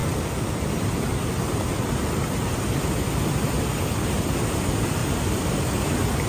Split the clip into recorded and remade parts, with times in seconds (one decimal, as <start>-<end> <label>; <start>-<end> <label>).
0.0-5.0 remade; 5.0-5.5 recorded; 5.5-6.3 remade